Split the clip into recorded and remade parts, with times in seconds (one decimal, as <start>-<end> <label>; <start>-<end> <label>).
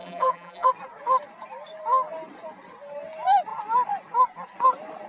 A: 0.0-0.7 remade; 0.7-5.1 recorded